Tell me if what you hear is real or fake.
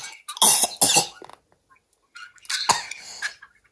real